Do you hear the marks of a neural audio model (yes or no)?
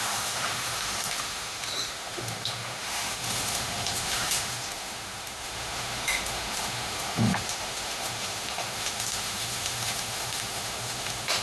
yes